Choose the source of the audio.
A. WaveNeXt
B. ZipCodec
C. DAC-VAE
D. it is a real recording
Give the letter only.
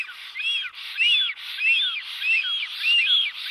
D